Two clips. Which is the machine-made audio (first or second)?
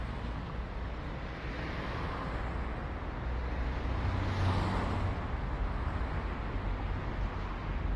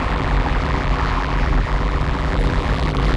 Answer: second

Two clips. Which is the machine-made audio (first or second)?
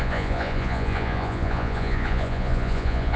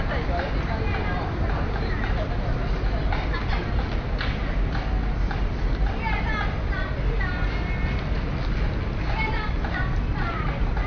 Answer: first